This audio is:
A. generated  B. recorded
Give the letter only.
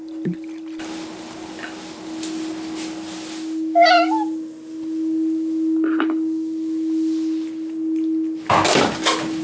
B